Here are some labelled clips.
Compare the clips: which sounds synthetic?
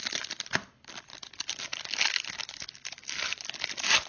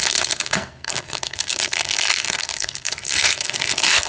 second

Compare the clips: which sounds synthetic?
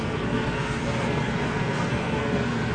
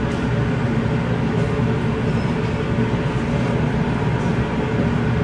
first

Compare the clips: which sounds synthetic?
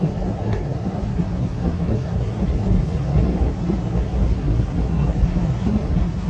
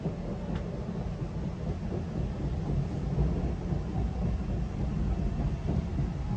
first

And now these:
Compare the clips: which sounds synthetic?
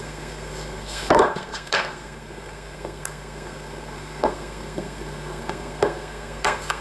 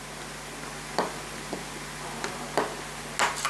first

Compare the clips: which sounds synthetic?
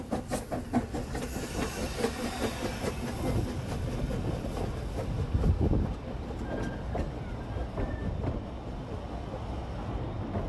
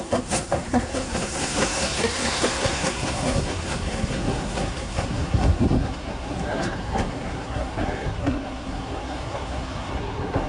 second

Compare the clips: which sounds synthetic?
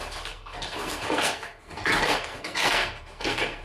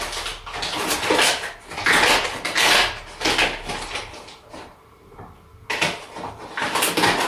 first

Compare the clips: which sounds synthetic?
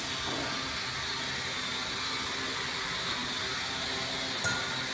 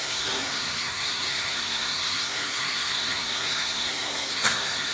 second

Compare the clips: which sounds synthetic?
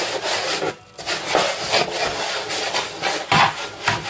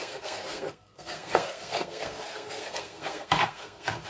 second